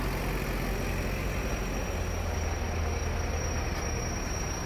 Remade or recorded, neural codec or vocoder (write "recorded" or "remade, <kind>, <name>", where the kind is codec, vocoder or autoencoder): recorded